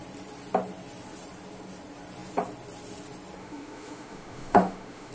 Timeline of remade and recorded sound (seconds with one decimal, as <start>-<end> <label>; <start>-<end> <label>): 0.0-3.4 recorded; 3.4-5.1 remade

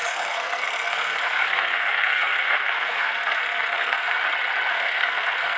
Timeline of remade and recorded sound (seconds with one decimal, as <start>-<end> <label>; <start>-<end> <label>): 0.0-4.2 remade; 4.2-4.7 recorded; 4.7-5.6 remade